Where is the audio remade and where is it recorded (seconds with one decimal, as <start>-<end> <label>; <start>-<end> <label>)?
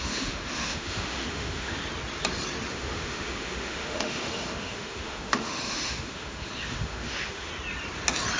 0.0-1.8 remade; 1.8-2.7 recorded; 2.7-7.5 remade; 7.5-8.4 recorded